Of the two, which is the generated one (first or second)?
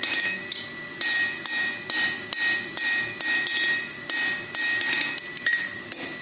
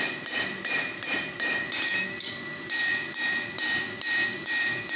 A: second